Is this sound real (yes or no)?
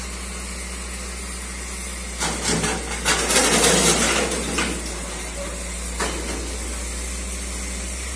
yes